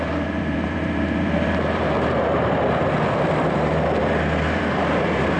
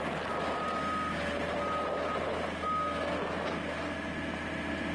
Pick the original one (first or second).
second